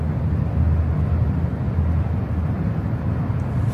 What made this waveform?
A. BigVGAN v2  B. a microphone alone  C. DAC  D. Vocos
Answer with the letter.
B